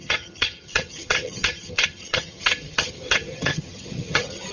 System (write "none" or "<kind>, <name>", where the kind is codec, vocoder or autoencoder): vocoder, HiFi-GAN